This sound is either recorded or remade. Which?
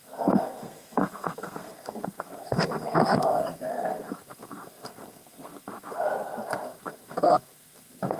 remade